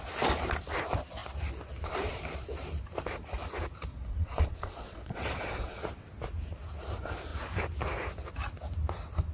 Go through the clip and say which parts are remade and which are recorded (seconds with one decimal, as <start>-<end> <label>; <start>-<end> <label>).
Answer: 0.0-3.9 recorded; 3.9-5.8 remade; 5.8-9.3 recorded